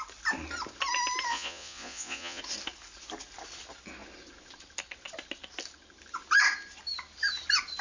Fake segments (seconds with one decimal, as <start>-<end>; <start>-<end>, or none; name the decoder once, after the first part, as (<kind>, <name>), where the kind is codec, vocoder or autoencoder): 1.3-2.4 (vocoder, Vocos)